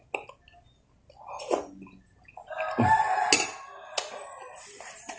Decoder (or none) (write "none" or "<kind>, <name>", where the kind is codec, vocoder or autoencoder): none